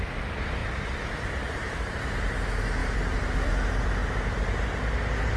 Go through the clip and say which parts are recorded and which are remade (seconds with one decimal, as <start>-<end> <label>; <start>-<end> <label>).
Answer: 0.0-0.6 recorded; 0.6-2.0 remade; 2.0-2.8 recorded; 2.8-3.5 remade; 3.5-5.4 recorded